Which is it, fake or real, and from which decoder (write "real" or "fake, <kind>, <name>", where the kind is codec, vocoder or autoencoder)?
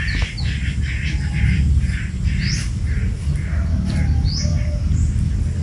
real